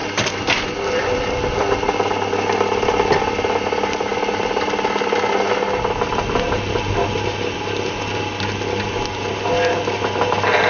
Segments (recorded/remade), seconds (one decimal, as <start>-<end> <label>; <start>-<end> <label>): 0.0-1.3 remade; 1.3-10.7 recorded